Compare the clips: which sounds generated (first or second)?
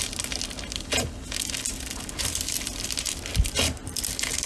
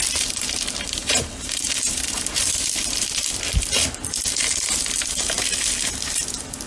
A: second